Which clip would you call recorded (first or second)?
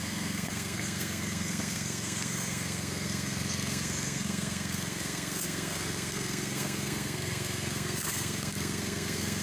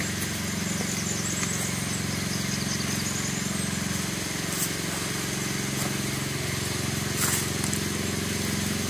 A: second